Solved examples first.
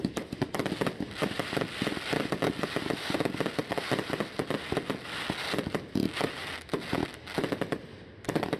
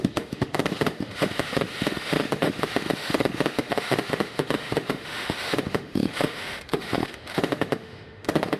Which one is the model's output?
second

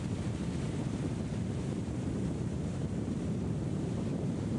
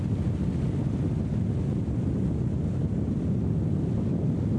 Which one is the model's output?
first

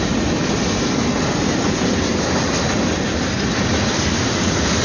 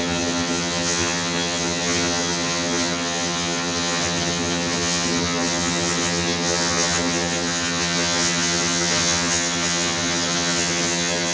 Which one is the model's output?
second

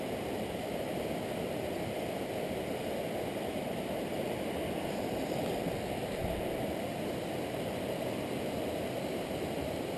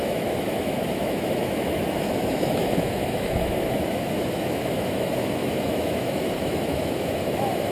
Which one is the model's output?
second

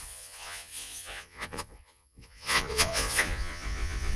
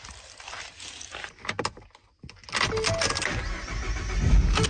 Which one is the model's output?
first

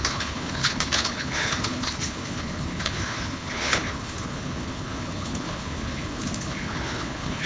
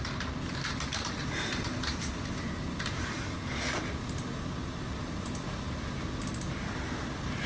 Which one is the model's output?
first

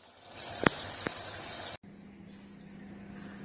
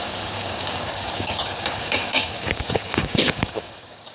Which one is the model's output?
second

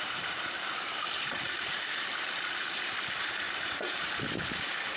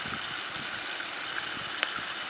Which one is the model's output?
first